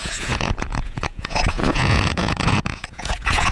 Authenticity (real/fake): fake